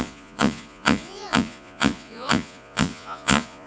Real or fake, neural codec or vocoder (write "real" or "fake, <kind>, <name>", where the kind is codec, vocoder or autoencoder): fake, vocoder, Vocos